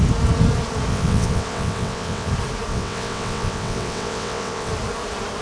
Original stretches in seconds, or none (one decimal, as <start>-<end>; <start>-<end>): 0.0-0.9; 2.3-2.7; 4.7-5.4